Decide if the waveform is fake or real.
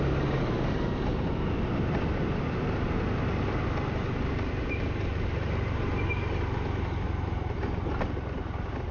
real